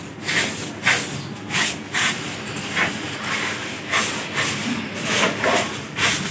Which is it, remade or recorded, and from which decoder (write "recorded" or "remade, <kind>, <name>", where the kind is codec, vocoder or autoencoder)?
recorded